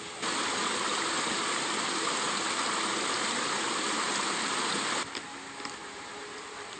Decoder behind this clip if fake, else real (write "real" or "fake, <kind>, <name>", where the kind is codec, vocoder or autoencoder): real